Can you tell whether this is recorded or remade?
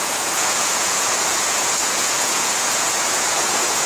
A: remade